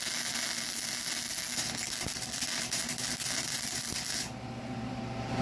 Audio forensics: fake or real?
real